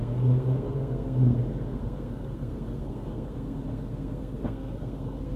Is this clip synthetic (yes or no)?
yes